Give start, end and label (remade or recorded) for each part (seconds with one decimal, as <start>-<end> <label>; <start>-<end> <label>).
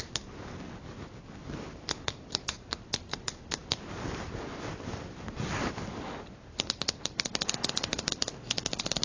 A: 0.0-9.0 recorded